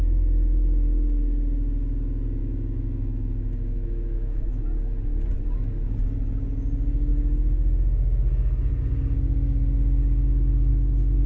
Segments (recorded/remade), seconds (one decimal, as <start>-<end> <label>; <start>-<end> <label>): 0.0-2.4 recorded; 2.4-4.6 remade; 4.6-11.3 recorded